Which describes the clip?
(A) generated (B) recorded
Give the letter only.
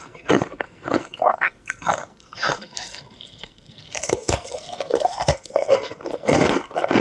A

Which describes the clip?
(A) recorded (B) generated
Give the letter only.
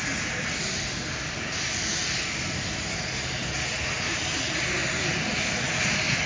A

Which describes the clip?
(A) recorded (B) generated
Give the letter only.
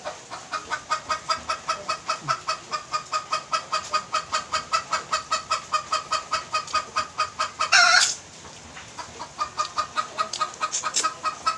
A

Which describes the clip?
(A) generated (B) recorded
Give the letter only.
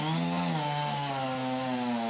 B